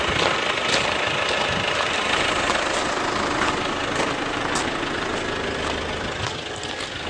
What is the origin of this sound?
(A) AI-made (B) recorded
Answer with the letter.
B